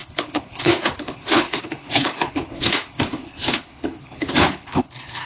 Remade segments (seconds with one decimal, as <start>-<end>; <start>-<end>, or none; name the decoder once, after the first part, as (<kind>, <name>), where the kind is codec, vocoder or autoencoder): 0.0-5.3 (codec, HILCodec)